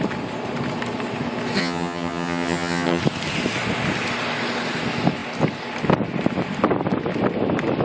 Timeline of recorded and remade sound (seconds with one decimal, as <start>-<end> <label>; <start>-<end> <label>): 0.0-1.6 recorded; 1.6-3.0 remade; 3.0-7.8 recorded